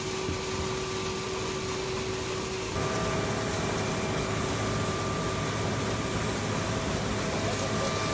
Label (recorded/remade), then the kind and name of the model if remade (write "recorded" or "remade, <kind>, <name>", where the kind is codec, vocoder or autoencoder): recorded